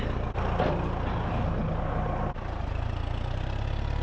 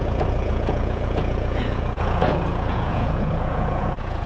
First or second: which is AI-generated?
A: second